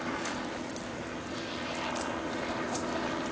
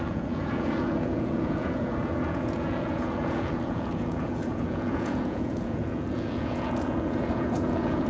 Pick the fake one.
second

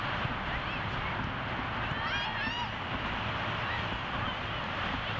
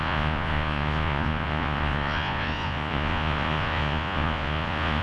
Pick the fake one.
second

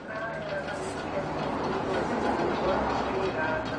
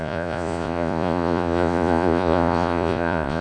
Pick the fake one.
second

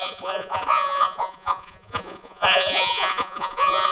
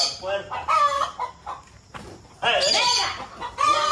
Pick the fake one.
first